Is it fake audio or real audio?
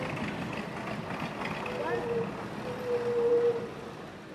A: real